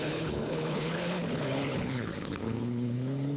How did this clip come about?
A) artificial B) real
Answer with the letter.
A